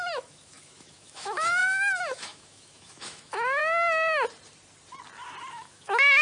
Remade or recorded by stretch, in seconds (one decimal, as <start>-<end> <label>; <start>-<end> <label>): 0.0-3.6 remade; 3.6-5.5 recorded; 5.5-6.2 remade